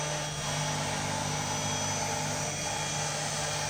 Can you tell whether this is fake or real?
real